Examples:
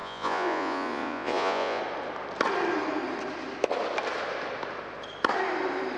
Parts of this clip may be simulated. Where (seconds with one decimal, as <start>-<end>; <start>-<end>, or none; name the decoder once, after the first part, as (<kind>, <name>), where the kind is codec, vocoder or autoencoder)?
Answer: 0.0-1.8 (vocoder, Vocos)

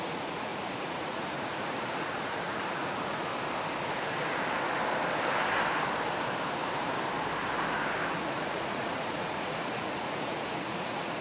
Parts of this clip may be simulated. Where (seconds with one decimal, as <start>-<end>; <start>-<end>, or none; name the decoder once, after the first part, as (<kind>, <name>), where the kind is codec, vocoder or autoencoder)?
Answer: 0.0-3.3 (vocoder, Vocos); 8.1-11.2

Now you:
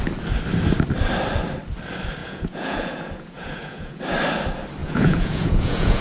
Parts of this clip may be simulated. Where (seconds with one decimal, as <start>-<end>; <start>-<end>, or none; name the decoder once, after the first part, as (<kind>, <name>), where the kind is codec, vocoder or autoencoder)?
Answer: 2.2-4.0 (vocoder, Vocos); 4.8-6.0

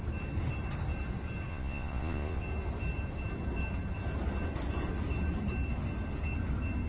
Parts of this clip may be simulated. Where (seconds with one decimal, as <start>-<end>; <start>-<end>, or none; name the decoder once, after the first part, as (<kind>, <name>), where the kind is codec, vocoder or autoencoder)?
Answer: 1.5-2.4 (vocoder, Vocos)